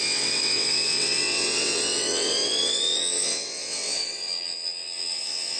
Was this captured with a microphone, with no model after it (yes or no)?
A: no